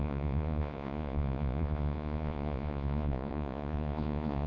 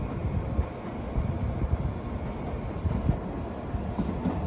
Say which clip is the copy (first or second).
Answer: first